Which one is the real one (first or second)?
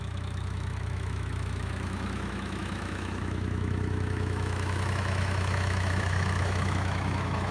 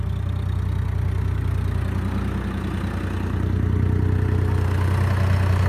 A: second